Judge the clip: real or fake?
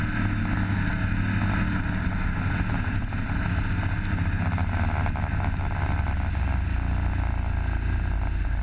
real